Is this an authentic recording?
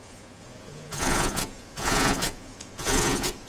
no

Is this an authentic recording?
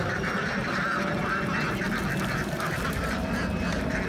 yes